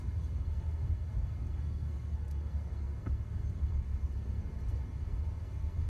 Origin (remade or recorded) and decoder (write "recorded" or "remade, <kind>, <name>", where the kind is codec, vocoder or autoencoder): remade, codec, SNAC